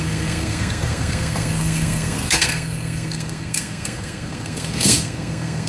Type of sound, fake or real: fake